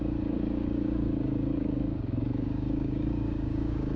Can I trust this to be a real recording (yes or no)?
no